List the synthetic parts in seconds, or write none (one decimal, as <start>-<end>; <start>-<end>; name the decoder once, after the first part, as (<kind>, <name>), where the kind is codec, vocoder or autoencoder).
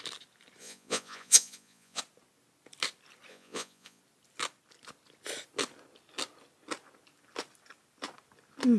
0.6-2.0 (vocoder, Vocos); 3.3-4.0